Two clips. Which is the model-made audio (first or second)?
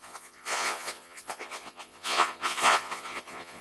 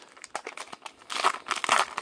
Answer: first